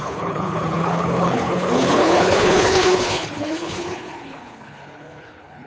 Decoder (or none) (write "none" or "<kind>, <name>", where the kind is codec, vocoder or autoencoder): codec, HILCodec